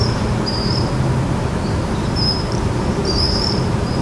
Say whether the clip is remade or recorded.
remade